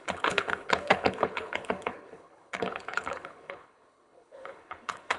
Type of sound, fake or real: fake